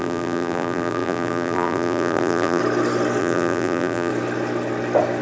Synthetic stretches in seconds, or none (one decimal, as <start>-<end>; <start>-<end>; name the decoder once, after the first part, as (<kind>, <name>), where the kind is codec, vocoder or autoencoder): 0.0-2.6 (vocoder, BigVGAN v2); 3.2-4.1